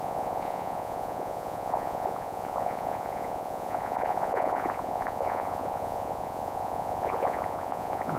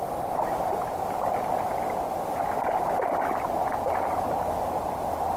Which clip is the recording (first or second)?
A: second